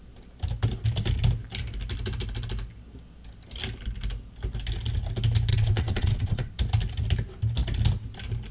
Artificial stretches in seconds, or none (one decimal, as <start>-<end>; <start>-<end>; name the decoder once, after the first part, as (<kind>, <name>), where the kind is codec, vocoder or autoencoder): 5.5-6.5 (vocoder, WaveNeXt)